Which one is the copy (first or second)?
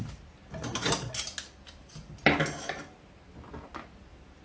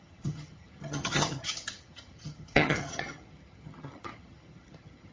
second